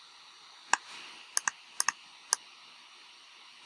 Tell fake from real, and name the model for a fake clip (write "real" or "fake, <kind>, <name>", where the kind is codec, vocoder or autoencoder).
real